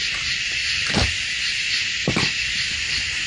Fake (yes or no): no